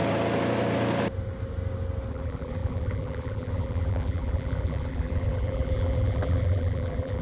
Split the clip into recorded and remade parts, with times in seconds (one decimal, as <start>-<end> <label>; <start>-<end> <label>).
0.0-2.1 recorded; 2.1-7.2 remade